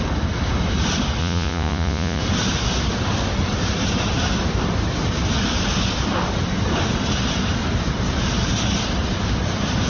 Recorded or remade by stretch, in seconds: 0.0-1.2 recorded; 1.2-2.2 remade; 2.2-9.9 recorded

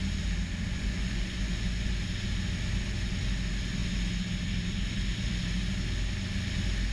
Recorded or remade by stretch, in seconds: 0.0-0.7 recorded; 0.7-1.9 remade; 1.9-6.9 recorded

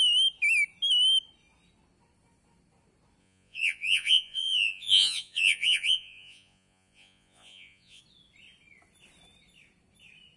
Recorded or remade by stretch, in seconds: 0.0-3.2 recorded; 3.2-8.0 remade; 8.0-10.4 recorded